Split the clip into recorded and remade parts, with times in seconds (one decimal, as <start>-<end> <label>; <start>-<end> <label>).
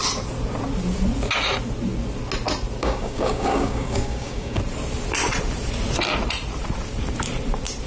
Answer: 0.0-2.8 recorded; 2.8-4.6 remade; 4.6-7.9 recorded